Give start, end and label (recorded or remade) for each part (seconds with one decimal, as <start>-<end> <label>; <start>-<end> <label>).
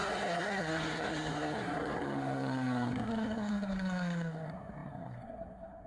0.0-5.9 remade